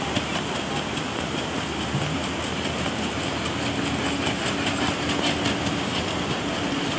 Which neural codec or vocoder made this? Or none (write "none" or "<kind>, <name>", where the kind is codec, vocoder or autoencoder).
none